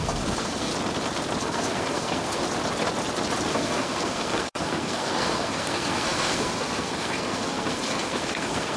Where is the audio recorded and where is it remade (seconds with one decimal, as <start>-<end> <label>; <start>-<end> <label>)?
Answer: 0.0-0.7 remade; 0.7-1.4 recorded; 1.4-2.4 remade; 2.4-3.5 recorded; 3.5-8.8 remade

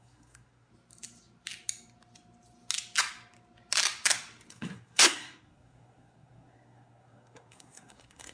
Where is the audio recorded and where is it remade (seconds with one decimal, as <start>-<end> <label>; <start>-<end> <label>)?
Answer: 0.0-0.7 remade; 0.7-4.5 recorded; 4.5-8.3 remade

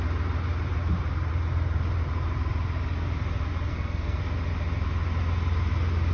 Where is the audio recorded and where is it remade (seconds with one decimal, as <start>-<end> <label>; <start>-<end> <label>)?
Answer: 0.0-3.7 recorded; 3.7-4.2 remade; 4.2-6.1 recorded

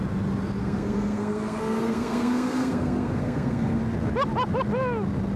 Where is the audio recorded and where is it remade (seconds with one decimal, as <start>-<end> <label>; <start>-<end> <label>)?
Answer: 0.0-0.6 recorded; 0.6-3.8 remade; 3.8-5.4 recorded

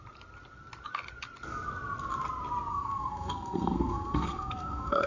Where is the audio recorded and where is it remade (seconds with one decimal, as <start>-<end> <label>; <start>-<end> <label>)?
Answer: 0.0-2.7 recorded; 2.7-5.1 remade

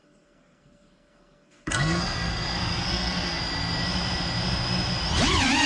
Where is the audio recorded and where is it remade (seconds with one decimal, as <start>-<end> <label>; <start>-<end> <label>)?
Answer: 0.0-3.4 remade; 3.4-5.7 recorded